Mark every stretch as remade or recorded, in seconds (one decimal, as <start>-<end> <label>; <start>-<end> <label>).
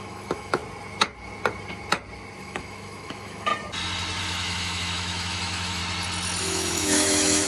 0.0-0.6 remade; 0.6-2.4 recorded; 2.4-3.5 remade; 3.5-4.2 recorded; 4.2-5.8 remade; 5.8-6.4 recorded; 6.4-7.5 remade